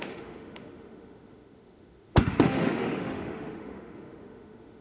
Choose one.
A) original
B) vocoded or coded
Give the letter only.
B